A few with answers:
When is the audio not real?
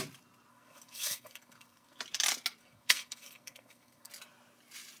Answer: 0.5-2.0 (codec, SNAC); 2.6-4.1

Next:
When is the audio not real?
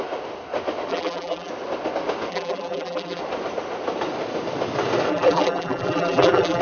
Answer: 0.9-1.5 (vocoder, BigVGAN v2); 2.3-3.2; 5.1-6.6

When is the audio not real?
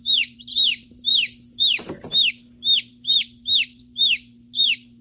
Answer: 0.0-1.1 (vocoder, BigVGAN v2); 1.6-2.1; 2.9-5.0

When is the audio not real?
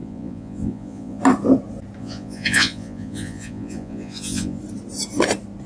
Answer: 0.0-1.2 (vocoder, Vocos); 2.0-4.6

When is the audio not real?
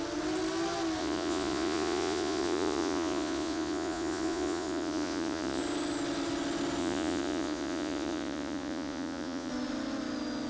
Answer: 1.0-5.6 (vocoder, Vocos); 6.8-9.5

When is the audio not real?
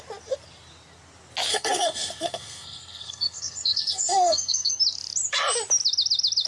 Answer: 1.5-4.7 (codec, SNAC)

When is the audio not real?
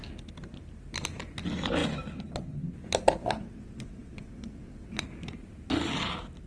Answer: 3.2-5.0 (vocoder, WaveNeXt)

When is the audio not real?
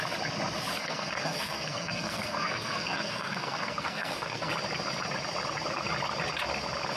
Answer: 0.7-4.5 (codec, SNAC)